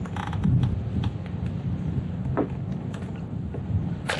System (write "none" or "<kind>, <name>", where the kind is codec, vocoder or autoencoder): none